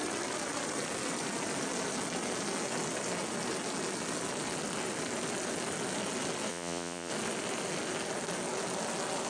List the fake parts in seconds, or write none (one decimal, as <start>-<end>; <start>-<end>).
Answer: 6.5-7.1